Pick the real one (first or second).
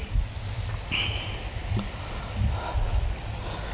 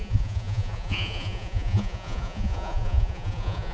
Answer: first